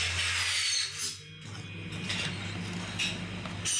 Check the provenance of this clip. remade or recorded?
recorded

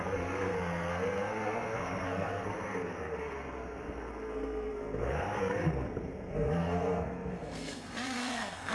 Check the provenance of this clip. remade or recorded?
remade